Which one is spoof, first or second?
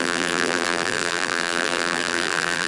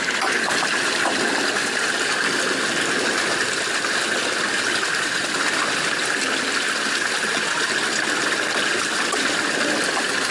first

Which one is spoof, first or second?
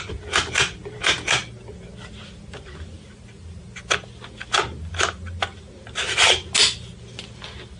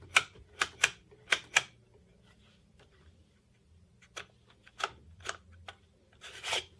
second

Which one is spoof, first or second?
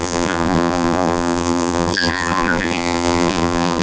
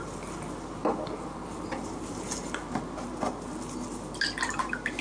first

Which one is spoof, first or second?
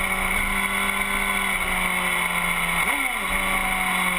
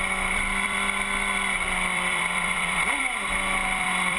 second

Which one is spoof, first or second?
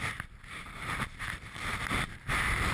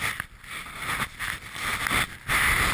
first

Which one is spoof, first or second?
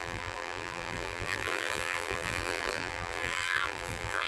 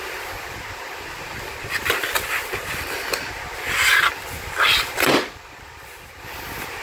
first